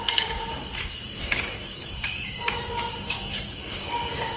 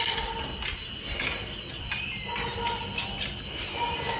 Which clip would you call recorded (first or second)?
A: second